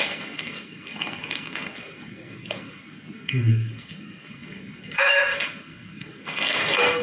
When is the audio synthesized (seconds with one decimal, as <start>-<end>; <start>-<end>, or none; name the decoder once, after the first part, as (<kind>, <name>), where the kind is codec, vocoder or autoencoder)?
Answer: 0.0-7.0 (codec, SNAC)